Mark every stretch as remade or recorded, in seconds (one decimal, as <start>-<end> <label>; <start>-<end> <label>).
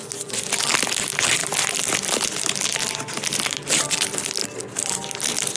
0.0-5.6 recorded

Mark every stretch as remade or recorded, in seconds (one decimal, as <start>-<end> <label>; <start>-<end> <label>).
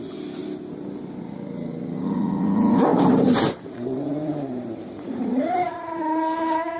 0.0-2.9 recorded; 2.9-6.0 remade; 6.0-6.8 recorded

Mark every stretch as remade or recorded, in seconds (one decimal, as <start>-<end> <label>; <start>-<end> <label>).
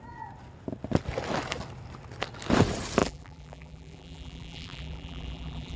0.0-3.0 recorded; 3.0-5.8 remade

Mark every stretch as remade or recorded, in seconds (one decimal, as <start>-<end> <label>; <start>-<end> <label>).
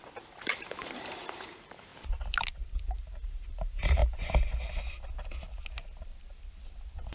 0.0-1.9 remade; 1.9-2.6 recorded; 2.6-4.0 remade; 4.0-7.1 recorded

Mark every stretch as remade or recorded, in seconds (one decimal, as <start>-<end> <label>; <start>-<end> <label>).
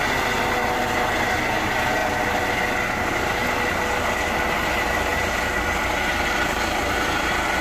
0.0-2.0 recorded; 2.0-2.6 remade; 2.6-5.1 recorded; 5.1-5.9 remade; 5.9-7.6 recorded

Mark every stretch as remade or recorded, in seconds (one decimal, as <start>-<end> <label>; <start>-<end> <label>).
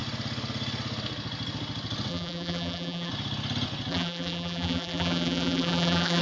0.0-2.1 recorded; 2.1-3.1 remade; 3.1-3.9 recorded; 3.9-6.2 remade